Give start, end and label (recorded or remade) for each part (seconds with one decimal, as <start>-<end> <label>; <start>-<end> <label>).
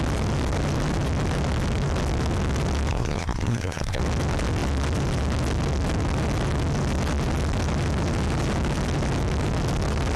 0.0-2.9 recorded; 2.9-4.0 remade; 4.0-10.2 recorded